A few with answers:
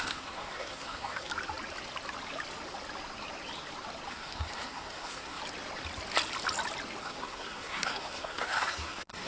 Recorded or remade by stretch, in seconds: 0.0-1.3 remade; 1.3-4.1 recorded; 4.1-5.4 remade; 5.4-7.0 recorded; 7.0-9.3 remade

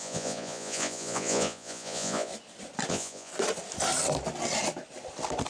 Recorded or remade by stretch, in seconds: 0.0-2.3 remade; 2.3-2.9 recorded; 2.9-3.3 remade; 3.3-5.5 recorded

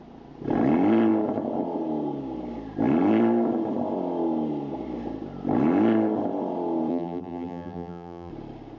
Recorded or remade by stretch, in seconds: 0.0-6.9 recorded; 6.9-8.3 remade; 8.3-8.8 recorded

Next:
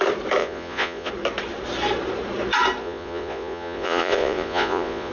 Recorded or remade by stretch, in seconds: 0.0-0.4 recorded; 0.4-1.1 remade; 1.1-2.8 recorded; 2.8-5.1 remade

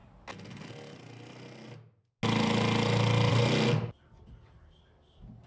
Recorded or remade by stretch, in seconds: 0.0-5.5 recorded

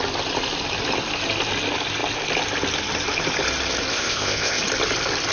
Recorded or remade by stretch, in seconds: 0.0-3.9 recorded; 3.9-4.6 remade; 4.6-5.3 recorded

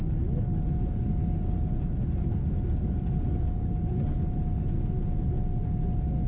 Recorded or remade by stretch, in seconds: 0.0-6.3 recorded